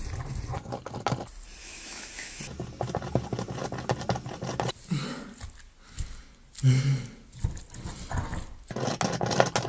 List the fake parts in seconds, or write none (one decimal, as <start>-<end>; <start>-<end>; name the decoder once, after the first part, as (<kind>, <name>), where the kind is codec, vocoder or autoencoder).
1.6-2.4 (autoencoder, DAC-VAE)